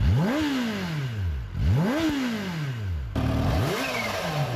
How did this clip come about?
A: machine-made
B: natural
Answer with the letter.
B